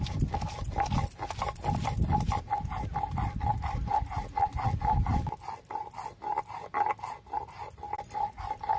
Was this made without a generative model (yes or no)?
yes